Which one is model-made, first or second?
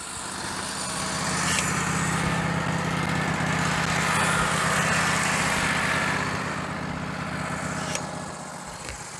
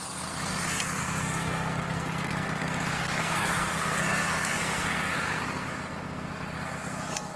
second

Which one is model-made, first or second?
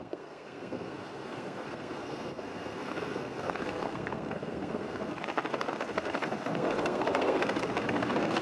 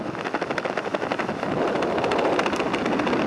first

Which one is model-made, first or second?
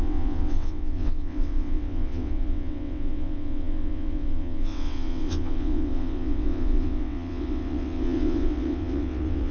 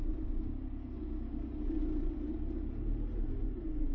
first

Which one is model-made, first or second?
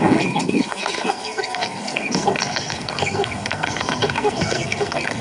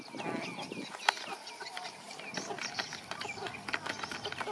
first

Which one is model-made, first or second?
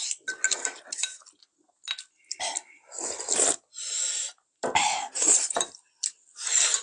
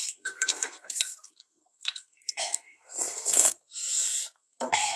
second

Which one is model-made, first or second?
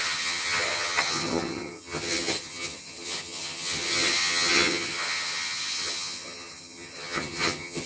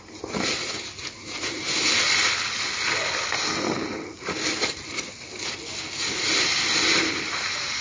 first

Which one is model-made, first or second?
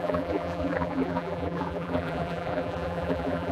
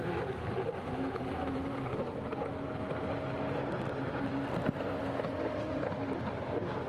first